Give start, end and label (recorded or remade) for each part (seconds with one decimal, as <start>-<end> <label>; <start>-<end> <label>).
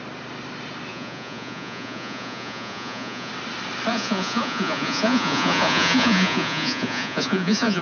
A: 0.0-0.9 recorded; 0.9-3.3 remade; 3.3-3.9 recorded; 3.9-7.8 remade